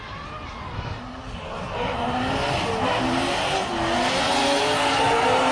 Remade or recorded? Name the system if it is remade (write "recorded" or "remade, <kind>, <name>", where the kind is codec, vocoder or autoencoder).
recorded